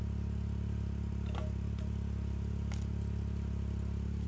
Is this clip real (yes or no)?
yes